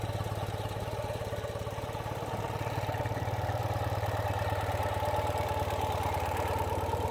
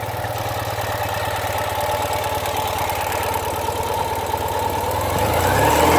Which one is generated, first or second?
first